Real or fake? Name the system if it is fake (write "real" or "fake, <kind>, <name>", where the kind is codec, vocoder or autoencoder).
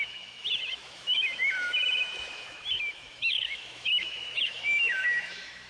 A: fake, autoencoder, DAC-VAE